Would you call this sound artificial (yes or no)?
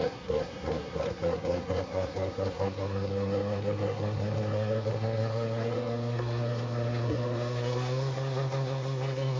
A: yes